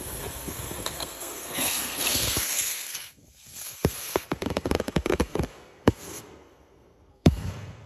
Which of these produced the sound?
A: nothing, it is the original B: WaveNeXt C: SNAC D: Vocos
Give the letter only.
C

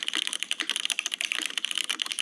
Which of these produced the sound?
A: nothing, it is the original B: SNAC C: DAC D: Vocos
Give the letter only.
A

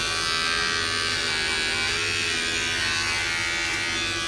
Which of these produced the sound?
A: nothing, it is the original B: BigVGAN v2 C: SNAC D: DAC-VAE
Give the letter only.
A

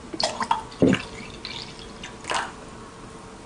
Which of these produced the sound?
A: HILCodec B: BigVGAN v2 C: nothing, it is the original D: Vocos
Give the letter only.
C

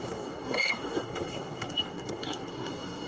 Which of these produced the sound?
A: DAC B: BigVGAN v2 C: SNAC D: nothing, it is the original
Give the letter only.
C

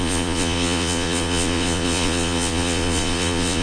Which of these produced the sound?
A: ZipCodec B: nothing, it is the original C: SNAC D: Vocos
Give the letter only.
D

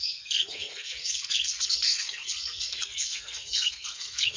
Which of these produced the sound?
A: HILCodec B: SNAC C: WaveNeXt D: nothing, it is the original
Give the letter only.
B